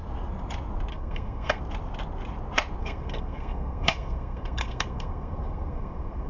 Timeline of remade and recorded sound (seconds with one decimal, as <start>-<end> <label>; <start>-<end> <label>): 0.0-0.9 recorded; 0.9-1.6 remade; 1.6-2.8 recorded; 2.8-6.3 remade

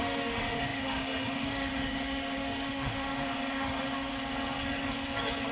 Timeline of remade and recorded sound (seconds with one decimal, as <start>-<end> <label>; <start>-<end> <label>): 0.0-4.1 remade; 4.1-5.5 recorded

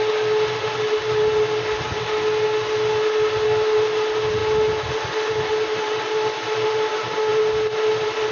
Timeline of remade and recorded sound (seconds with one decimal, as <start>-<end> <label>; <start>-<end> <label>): 0.0-8.3 recorded